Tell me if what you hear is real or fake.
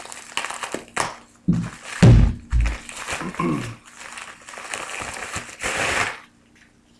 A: real